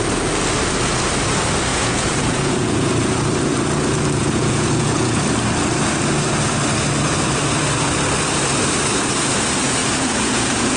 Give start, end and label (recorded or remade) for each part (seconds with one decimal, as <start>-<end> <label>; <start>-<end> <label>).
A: 0.0-1.7 recorded; 1.7-2.9 remade; 2.9-4.2 recorded; 4.2-5.2 remade; 5.2-9.8 recorded; 9.8-10.8 remade